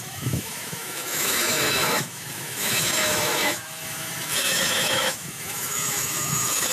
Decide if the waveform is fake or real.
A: fake